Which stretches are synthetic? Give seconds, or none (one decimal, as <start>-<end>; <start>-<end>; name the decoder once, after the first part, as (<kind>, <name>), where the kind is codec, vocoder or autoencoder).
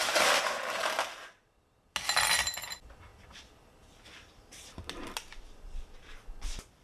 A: none